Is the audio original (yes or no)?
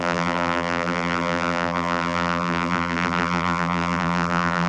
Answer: no